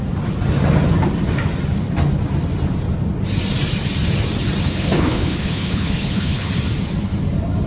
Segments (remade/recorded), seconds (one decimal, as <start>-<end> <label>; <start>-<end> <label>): 0.0-4.6 recorded; 4.6-6.5 remade; 6.5-7.7 recorded